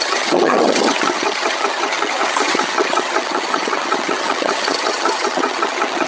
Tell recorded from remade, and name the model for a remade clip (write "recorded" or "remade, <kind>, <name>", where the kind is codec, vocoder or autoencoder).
remade, vocoder, HiFi-GAN